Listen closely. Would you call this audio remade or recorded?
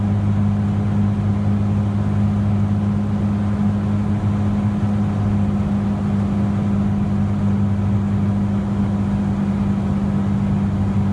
recorded